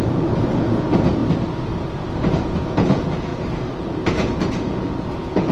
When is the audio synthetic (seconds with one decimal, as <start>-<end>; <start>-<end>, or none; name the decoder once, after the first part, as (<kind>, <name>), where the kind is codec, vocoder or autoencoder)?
0.0-1.2 (vocoder, Vocos); 2.3-3.3; 3.8-5.5